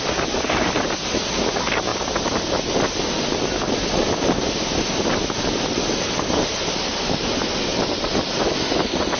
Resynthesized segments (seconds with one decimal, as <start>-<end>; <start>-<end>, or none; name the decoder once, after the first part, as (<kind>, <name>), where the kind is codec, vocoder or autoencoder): none